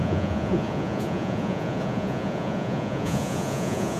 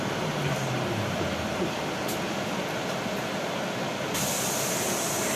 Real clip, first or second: second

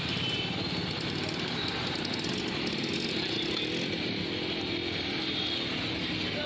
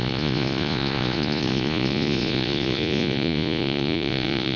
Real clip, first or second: first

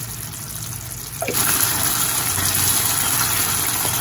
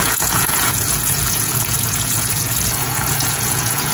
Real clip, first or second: first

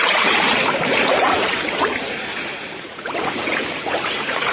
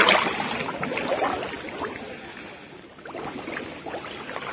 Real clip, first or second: second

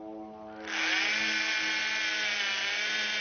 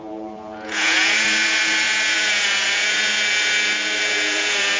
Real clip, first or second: first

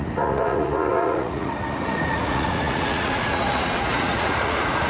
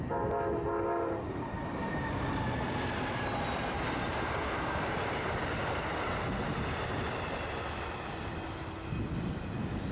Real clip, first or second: second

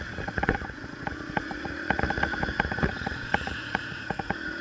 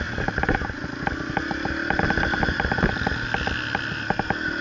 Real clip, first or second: second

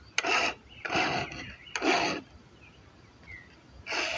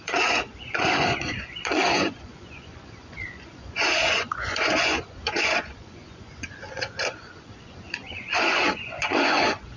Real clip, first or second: first